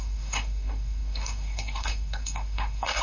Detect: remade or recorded remade